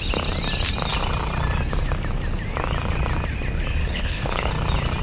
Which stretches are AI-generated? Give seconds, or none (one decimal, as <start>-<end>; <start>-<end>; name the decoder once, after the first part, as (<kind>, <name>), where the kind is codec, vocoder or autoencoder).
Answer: 3.8-4.5 (codec, HILCodec)

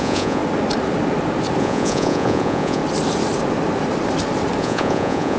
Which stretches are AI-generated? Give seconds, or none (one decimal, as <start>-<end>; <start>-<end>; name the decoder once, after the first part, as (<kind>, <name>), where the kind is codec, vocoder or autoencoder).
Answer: 0.0-0.4 (vocoder, Vocos); 1.6-2.8; 4.6-5.4